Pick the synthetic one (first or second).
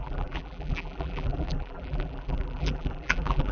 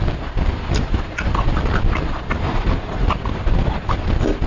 first